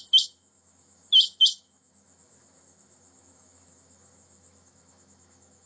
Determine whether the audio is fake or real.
fake